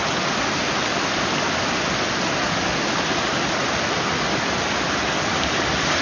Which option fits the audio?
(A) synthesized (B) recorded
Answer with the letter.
B